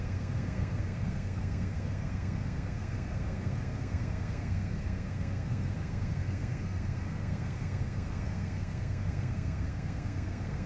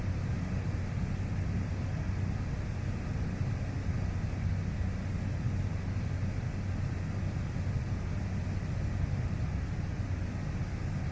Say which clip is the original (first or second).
second